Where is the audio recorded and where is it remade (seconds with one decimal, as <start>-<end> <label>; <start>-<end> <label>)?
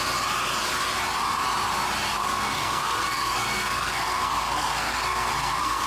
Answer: 0.0-2.1 recorded; 2.1-5.9 remade